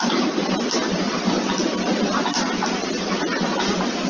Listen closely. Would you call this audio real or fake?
fake